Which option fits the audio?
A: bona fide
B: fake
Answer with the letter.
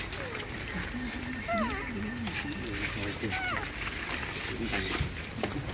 A